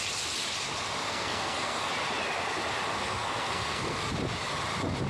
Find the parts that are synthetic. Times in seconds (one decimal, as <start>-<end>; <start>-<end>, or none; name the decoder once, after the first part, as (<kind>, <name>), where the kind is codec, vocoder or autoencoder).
1.0-1.9 (codec, SNAC); 2.9-4.0